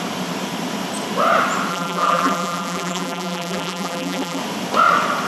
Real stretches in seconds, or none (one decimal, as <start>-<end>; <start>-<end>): 0.0-1.7; 4.4-5.3